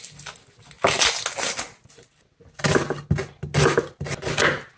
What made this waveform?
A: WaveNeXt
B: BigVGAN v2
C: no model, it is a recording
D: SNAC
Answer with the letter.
C